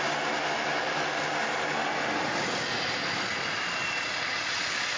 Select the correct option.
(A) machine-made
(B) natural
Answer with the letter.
B